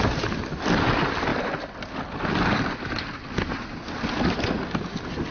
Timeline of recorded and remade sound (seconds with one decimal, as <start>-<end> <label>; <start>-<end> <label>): 0.0-1.3 recorded; 1.3-2.8 remade; 2.8-5.3 recorded